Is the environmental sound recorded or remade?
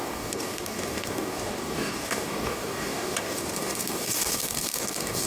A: remade